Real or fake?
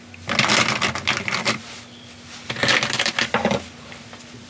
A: real